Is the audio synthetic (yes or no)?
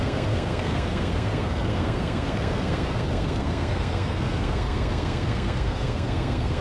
yes